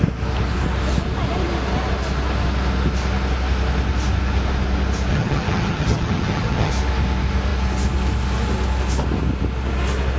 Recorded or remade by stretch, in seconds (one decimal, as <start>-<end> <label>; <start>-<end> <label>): 0.0-5.1 recorded; 5.1-6.7 remade; 6.7-10.2 recorded